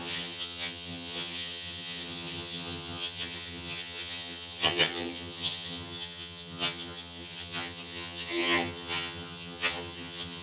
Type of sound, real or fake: fake